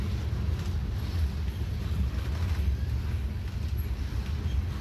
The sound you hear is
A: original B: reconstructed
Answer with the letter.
A